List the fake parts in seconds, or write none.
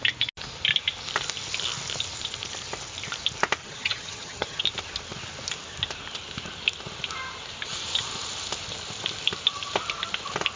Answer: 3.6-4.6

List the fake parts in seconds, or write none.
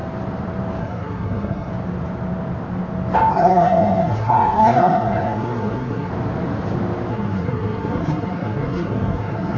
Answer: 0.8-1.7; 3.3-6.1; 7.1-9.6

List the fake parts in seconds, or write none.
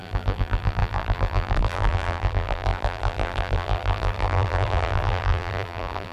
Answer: 0.0-6.1